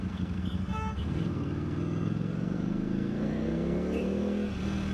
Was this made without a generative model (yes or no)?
no